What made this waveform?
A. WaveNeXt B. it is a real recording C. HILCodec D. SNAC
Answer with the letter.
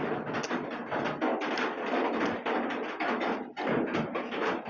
B